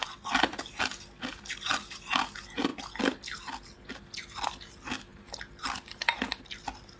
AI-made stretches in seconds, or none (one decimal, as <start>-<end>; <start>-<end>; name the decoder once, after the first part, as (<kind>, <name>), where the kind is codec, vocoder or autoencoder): none